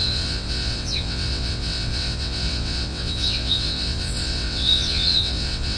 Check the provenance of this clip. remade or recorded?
remade